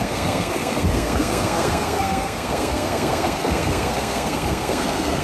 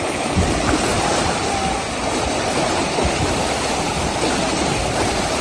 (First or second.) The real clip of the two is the second